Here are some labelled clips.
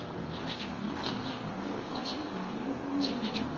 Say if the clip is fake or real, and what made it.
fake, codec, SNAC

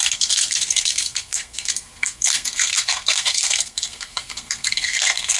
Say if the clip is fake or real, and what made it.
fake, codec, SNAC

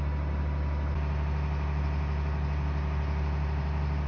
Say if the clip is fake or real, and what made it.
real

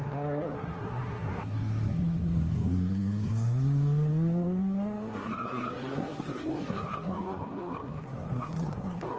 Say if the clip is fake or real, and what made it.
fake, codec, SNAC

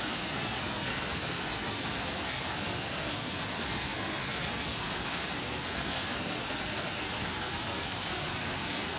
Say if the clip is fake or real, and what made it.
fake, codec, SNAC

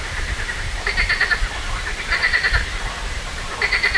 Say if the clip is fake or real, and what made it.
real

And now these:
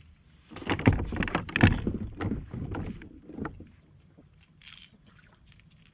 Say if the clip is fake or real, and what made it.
real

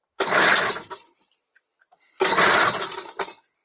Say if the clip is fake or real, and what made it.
real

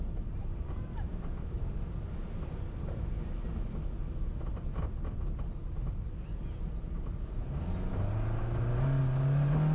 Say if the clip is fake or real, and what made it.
real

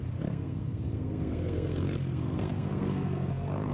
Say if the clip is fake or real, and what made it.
fake, codec, SNAC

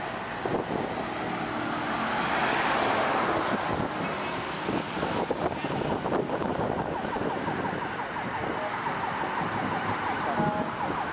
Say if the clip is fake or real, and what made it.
real